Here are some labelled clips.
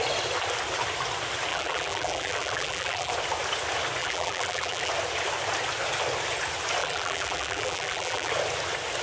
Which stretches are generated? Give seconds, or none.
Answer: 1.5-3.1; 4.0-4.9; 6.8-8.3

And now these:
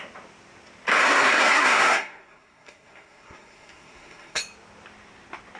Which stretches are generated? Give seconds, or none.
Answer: 1.0-4.4

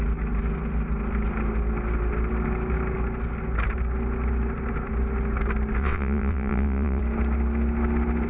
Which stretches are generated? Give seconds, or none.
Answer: 5.8-7.0

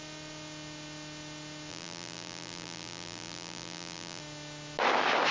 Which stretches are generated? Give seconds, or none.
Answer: 1.7-4.2

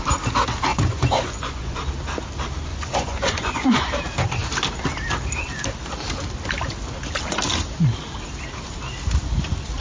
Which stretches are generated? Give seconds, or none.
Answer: 0.7-1.8; 2.7-3.9

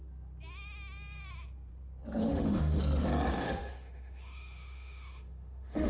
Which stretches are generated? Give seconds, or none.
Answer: 2.2-2.8; 3.4-5.9

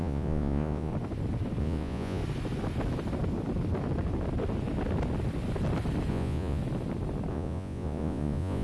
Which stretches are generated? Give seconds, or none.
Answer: 0.0-0.9; 1.6-2.2; 6.1-6.6; 7.3-8.6

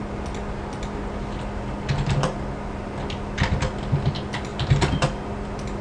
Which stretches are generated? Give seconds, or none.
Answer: none